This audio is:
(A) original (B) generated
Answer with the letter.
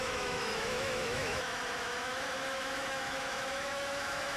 B